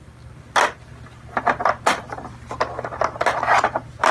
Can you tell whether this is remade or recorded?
recorded